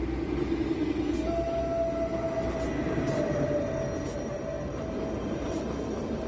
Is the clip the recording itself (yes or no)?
yes